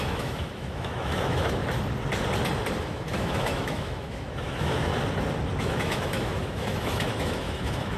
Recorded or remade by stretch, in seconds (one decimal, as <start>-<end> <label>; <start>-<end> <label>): 0.0-1.6 remade; 1.6-2.8 recorded; 2.8-4.9 remade; 4.9-5.6 recorded; 5.6-8.0 remade